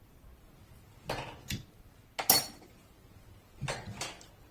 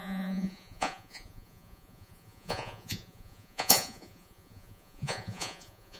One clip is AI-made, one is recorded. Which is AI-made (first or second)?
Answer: second